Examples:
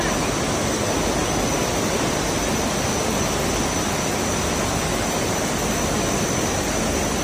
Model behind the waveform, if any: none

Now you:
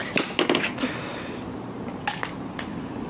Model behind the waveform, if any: none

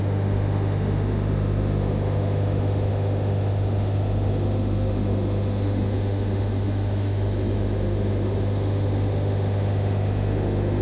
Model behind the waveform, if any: autoencoder, DAC-VAE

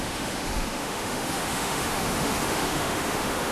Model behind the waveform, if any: autoencoder, DAC-VAE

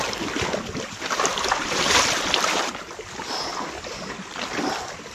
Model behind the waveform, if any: none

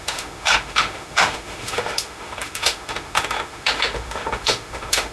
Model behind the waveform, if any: autoencoder, DAC-VAE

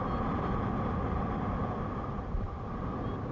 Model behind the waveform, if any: none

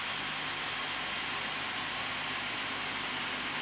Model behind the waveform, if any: none